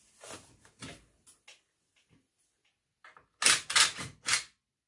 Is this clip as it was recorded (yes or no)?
yes